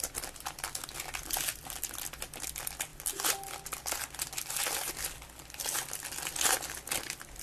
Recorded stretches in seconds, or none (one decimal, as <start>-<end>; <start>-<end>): 0.0-7.4